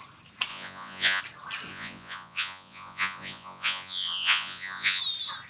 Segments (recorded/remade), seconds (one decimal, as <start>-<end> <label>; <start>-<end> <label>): 0.0-0.5 recorded; 0.5-1.2 remade; 1.2-1.7 recorded; 1.7-5.0 remade; 5.0-5.5 recorded